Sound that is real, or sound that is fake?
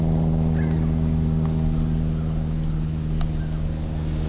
real